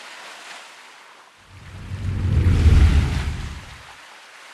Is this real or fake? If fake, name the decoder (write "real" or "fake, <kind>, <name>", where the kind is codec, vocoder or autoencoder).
real